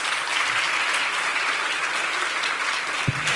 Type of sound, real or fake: real